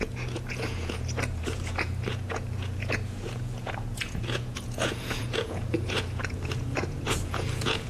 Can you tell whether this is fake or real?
fake